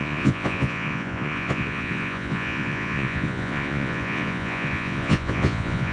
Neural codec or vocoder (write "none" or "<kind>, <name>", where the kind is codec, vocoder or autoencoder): vocoder, Vocos